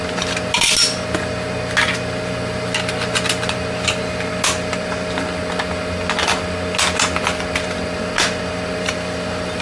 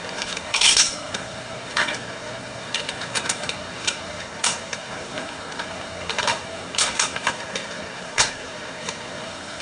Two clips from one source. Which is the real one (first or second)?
first